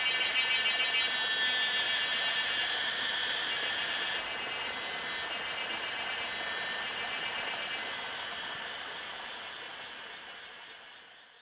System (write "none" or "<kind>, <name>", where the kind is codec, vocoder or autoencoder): none